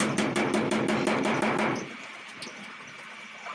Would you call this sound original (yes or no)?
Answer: yes